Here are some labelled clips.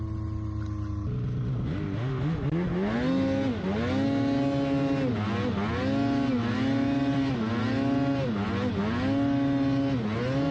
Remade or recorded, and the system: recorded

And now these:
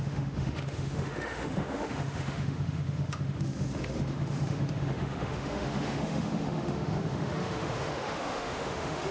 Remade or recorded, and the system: remade, autoencoder, DAC-VAE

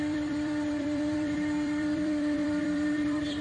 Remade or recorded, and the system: remade, vocoder, BigVGAN v2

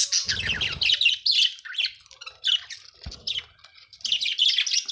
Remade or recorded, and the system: recorded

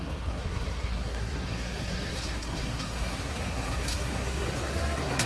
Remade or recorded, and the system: remade, codec, SNAC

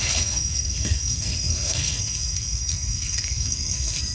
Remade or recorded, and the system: remade, codec, SNAC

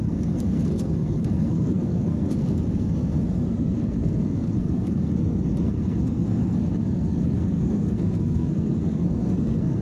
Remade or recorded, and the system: remade, codec, SNAC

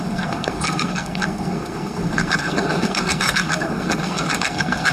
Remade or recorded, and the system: remade, codec, SNAC